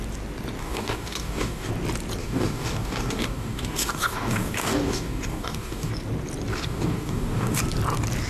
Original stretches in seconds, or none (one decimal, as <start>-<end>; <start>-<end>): 0.0-0.6; 1.7-2.2; 5.9-6.5; 7.6-8.3